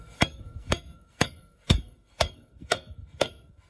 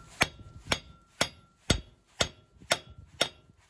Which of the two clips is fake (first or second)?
first